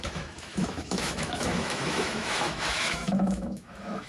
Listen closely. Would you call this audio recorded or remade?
remade